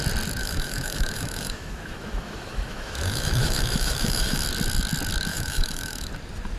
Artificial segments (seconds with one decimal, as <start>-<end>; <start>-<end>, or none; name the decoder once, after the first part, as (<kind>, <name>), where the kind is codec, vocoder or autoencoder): 0.4-4.4 (autoencoder, DAC-VAE); 5.3-6.1